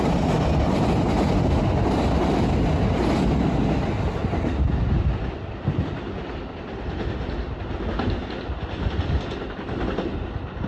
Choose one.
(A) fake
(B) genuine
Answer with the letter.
B